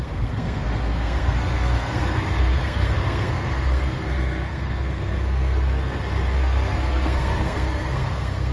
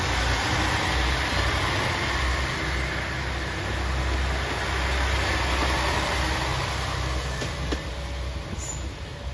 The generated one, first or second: first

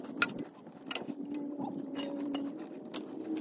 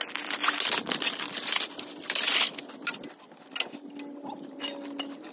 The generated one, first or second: first